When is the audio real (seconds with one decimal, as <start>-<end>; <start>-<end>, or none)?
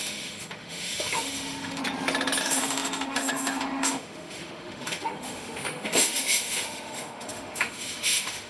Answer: 1.8-2.4